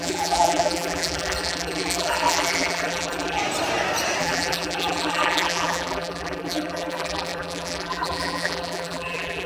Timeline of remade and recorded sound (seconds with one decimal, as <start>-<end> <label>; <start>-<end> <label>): 0.0-3.4 remade; 3.4-4.2 recorded; 4.2-9.5 remade

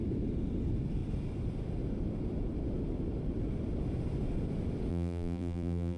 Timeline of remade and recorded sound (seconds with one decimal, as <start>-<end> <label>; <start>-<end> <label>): 0.0-4.9 recorded; 4.9-6.0 remade

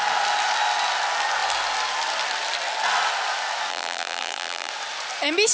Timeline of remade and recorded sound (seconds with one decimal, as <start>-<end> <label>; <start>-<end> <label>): 0.0-3.7 recorded; 3.7-4.7 remade; 4.7-5.5 recorded